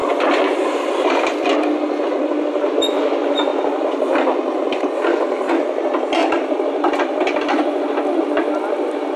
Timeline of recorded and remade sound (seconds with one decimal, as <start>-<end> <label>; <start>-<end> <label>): 0.0-1.2 remade; 1.2-3.5 recorded; 3.5-5.8 remade; 5.8-6.2 recorded; 6.2-7.8 remade; 7.8-9.2 recorded